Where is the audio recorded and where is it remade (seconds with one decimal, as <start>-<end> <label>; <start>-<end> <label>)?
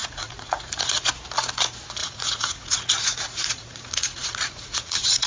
0.0-1.1 remade; 1.1-2.0 recorded; 2.0-5.3 remade